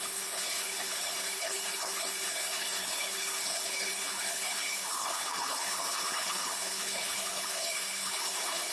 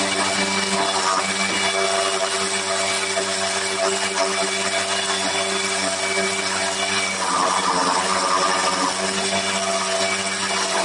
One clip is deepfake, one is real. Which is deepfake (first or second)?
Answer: first